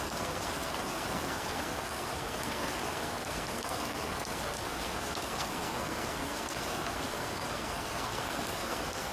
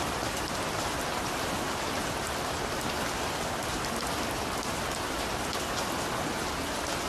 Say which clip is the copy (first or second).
first